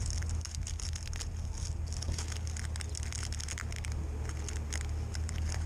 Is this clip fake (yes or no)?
no